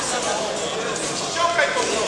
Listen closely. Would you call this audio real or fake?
real